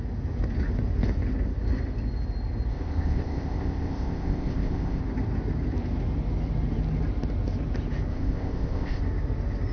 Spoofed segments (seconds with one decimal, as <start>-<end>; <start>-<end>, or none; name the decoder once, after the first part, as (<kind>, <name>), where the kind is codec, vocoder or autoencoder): 2.7-5.0 (codec, ZipCodec); 8.1-9.0